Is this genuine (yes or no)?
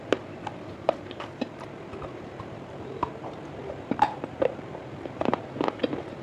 no